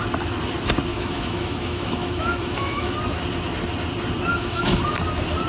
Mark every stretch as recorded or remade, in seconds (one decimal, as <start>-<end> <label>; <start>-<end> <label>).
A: 0.0-0.9 recorded; 0.9-2.9 remade; 2.9-4.3 recorded; 4.3-4.8 remade; 4.8-5.5 recorded